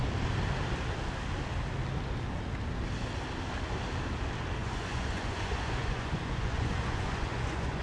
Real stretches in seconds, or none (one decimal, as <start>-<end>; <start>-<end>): 0.0-4.6